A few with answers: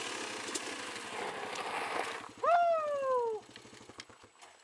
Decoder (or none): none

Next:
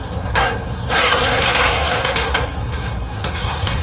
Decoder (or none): codec, SNAC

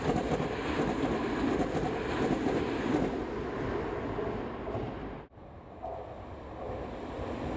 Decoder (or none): none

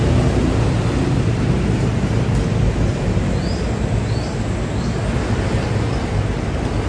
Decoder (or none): none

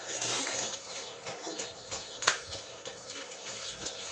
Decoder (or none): codec, SNAC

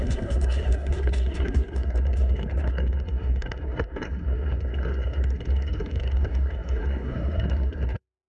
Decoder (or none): codec, SNAC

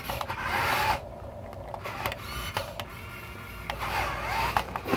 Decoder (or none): none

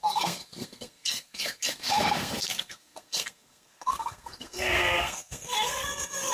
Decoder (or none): codec, SNAC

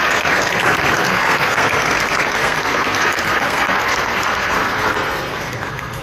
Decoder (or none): codec, SNAC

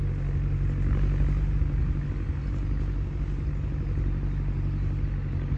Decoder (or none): none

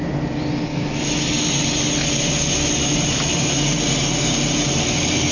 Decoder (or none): none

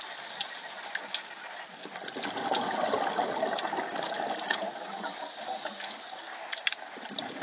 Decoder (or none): none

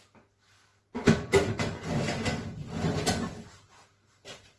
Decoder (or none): none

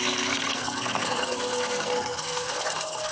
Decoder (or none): codec, SNAC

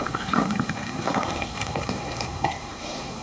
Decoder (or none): codec, SNAC